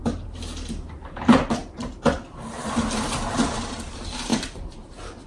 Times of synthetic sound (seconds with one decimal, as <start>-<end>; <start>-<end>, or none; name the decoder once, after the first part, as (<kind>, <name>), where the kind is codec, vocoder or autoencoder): 0.0-5.3 (vocoder, BigVGAN v2)